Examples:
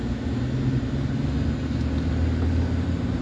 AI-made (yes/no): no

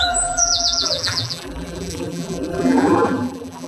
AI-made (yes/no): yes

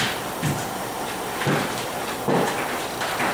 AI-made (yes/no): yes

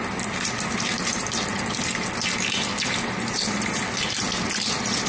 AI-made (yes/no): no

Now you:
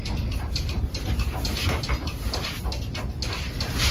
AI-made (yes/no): no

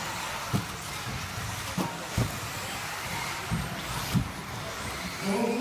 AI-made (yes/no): no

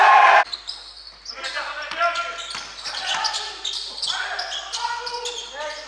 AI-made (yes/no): no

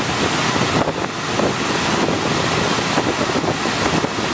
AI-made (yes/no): no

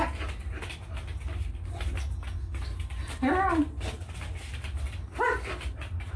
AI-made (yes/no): no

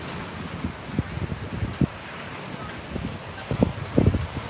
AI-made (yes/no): no